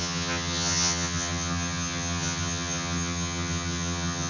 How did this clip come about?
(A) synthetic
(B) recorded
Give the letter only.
A